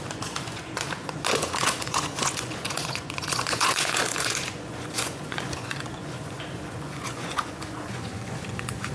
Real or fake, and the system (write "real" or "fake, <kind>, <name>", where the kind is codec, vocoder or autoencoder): fake, vocoder, Vocos